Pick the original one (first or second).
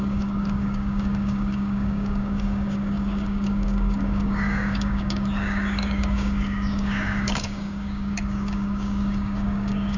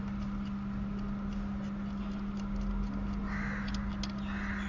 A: second